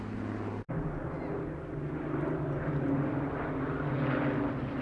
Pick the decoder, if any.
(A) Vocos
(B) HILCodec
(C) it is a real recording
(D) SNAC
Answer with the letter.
C